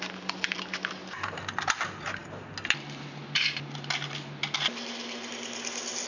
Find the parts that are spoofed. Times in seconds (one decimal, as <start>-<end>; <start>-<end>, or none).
none